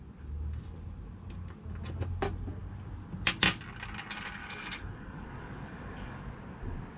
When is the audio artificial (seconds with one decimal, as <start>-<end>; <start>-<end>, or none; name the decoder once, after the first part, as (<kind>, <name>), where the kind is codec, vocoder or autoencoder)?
4.4-6.2 (codec, DAC)